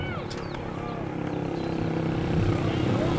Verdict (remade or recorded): recorded